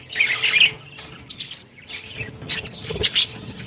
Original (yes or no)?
yes